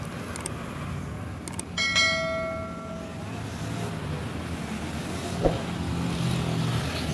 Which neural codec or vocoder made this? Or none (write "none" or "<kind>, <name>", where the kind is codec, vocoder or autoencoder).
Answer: none